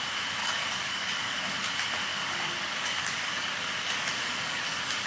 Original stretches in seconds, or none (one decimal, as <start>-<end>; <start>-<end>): 0.0-0.4; 1.7-2.1